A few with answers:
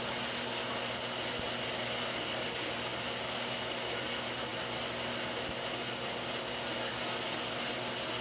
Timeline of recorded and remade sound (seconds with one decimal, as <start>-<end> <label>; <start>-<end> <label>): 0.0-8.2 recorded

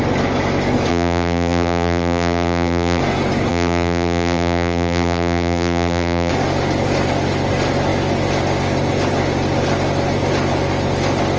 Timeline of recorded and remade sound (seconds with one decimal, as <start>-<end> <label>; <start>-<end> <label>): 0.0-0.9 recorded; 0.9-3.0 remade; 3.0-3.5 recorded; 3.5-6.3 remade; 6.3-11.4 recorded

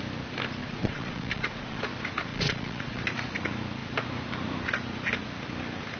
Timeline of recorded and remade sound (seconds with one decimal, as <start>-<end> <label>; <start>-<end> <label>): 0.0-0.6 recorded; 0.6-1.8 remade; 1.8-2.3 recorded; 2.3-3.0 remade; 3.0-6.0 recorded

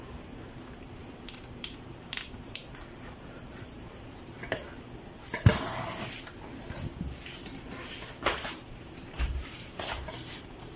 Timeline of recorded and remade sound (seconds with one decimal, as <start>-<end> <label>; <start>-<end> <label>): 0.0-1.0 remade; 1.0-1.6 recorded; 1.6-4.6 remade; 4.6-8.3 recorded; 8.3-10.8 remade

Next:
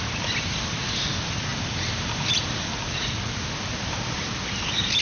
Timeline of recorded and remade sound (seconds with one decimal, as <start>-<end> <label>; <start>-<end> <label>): 0.0-1.5 recorded; 1.5-2.3 remade; 2.3-5.0 recorded

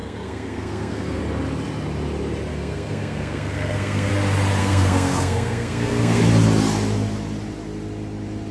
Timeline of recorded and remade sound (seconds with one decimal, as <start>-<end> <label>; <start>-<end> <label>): 0.0-1.2 remade; 1.2-2.5 recorded; 2.5-4.1 remade; 4.1-4.6 recorded; 4.6-6.2 remade; 6.2-8.5 recorded

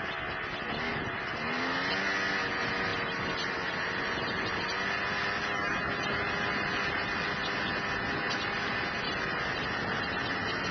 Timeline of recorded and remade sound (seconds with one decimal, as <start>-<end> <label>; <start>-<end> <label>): 0.0-10.7 recorded

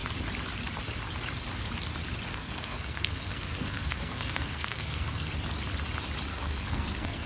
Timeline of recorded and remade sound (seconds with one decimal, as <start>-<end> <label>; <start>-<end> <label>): 0.0-2.3 recorded; 2.3-5.3 remade; 5.3-6.3 recorded; 6.3-7.3 remade